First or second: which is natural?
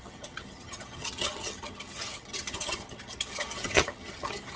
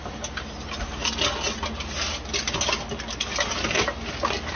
second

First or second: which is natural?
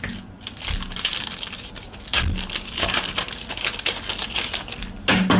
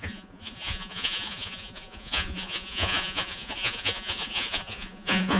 first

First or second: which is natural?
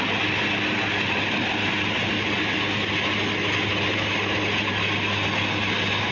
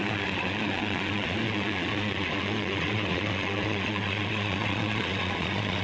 first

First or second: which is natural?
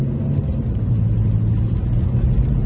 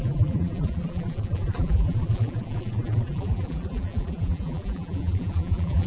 first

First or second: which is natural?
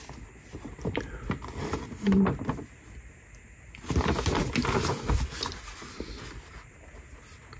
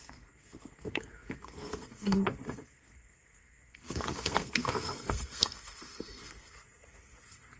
first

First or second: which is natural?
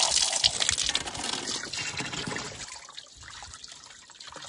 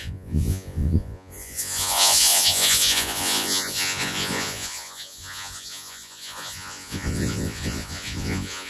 first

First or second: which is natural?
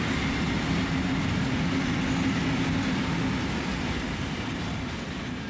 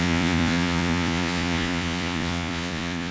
first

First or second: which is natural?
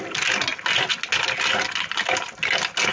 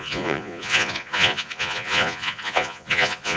first